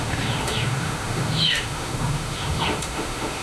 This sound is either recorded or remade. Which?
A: remade